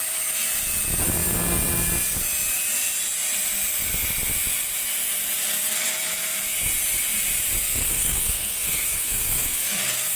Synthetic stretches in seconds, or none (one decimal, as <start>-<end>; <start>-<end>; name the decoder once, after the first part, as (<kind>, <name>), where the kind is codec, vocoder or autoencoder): 7.6-10.2 (codec, SNAC)